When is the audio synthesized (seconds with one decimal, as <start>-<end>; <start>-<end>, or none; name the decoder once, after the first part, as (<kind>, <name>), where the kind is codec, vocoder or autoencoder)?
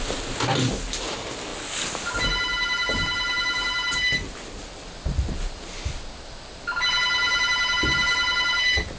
none